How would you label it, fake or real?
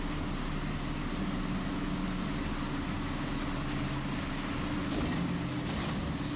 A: real